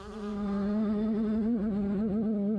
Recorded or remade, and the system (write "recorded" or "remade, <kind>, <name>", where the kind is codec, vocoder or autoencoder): recorded